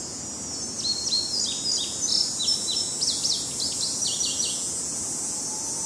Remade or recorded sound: recorded